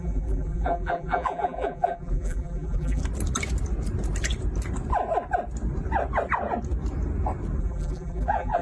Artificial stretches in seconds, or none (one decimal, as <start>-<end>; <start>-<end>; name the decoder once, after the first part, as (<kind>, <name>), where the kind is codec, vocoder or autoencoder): 0.0-3.0 (vocoder, BigVGAN v2); 7.6-8.6